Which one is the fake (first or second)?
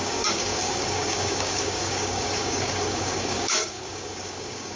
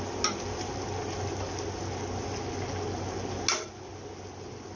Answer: first